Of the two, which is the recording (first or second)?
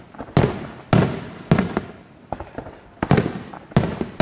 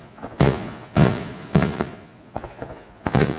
first